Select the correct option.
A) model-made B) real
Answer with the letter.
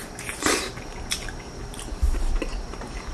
A